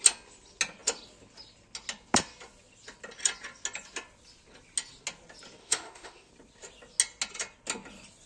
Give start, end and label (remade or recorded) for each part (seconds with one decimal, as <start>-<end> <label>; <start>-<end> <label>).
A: 0.0-5.6 recorded; 5.6-6.3 remade; 6.3-8.3 recorded